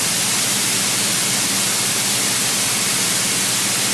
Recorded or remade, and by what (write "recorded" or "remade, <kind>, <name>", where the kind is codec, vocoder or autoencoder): remade, vocoder, BigVGAN v2